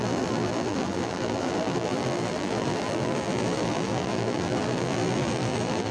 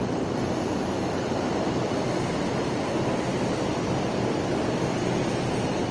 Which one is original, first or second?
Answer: second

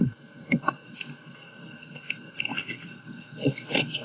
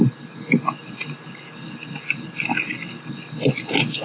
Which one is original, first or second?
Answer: second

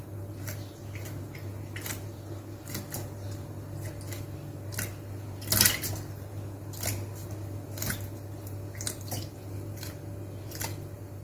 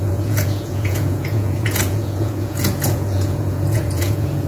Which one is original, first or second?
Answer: first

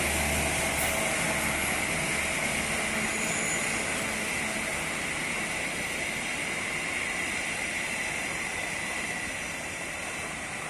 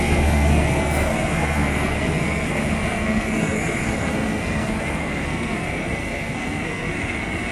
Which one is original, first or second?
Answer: first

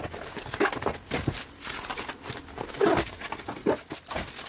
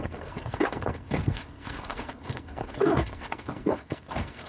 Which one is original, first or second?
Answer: first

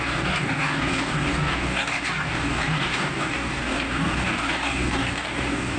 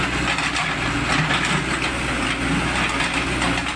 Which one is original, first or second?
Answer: second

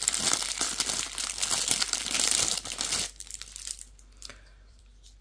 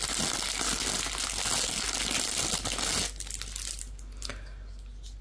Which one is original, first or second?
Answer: second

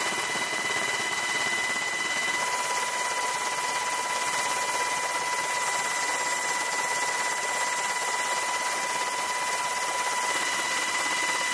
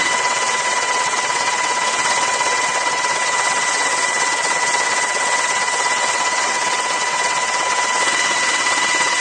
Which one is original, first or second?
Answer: first